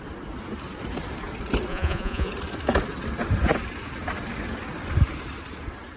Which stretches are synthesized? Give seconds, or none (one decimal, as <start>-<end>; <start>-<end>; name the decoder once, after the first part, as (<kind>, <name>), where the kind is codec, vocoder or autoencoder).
1.7-2.3 (vocoder, Vocos)